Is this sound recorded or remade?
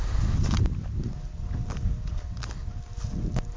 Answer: recorded